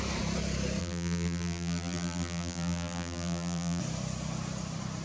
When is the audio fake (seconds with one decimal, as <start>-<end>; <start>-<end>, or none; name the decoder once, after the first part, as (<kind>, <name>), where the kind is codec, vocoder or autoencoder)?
0.8-3.8 (vocoder, BigVGAN v2)